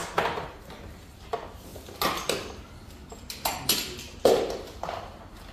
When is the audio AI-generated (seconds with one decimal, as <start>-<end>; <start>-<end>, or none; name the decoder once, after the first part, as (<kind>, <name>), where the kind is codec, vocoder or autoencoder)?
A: none